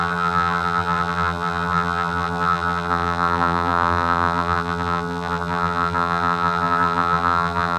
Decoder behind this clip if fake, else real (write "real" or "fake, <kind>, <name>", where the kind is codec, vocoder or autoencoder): fake, vocoder, BigVGAN v2